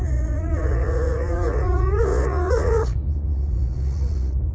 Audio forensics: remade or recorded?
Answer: remade